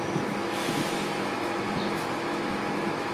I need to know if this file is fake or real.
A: fake